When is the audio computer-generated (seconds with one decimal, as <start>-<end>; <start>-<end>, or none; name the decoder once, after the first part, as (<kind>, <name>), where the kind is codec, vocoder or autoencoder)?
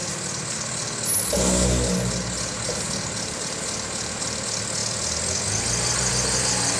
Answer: none